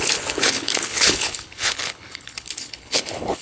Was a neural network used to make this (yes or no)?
yes